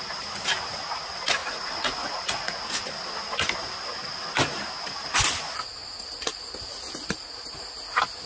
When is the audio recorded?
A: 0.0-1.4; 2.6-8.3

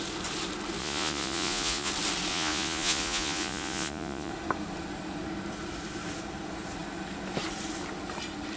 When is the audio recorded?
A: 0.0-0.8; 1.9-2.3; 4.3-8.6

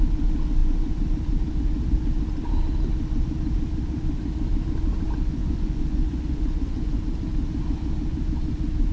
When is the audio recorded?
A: 0.0-5.4; 7.0-8.9

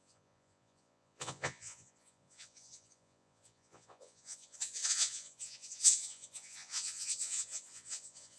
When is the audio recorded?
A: none